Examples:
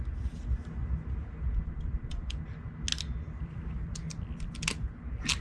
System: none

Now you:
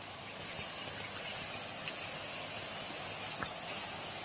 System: none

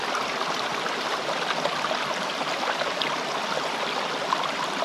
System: none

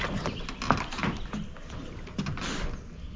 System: none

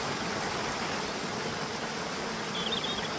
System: none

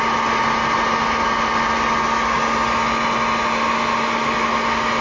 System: none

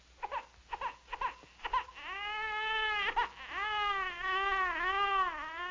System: none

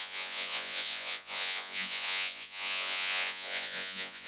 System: vocoder, Vocos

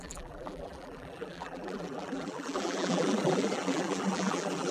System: vocoder, BigVGAN v2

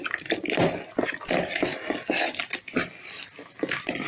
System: none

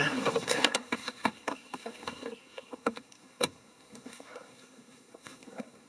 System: codec, SNAC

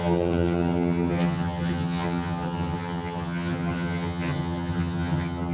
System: vocoder, HiFi-GAN